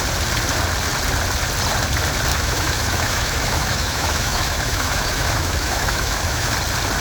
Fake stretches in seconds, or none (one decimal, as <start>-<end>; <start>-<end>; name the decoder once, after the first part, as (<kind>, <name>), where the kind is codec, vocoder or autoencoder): 2.3-6.5 (autoencoder, DAC-VAE)